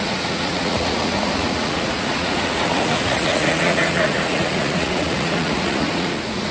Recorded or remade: remade